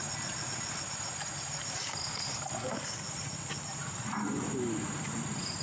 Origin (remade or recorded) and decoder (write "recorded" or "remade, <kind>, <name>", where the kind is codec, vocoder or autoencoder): recorded